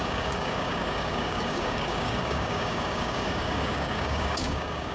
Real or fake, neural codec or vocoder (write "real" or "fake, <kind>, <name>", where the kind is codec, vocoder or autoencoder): fake, codec, DAC